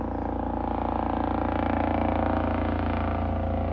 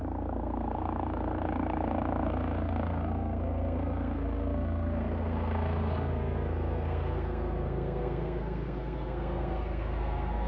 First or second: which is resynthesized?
second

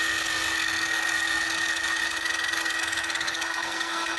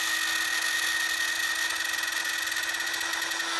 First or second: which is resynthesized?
first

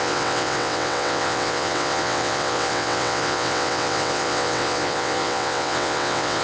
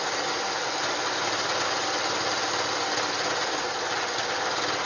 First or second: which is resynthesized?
first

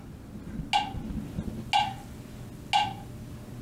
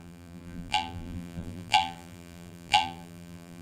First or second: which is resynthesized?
second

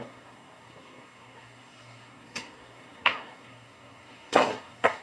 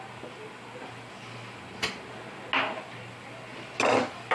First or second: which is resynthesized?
first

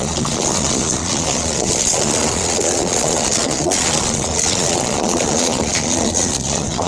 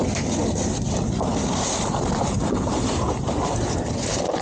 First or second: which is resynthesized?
first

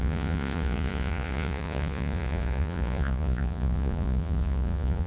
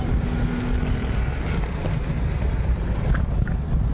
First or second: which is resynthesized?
first